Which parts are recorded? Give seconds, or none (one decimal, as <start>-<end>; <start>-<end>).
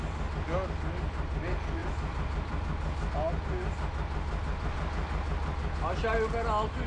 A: 0.0-6.9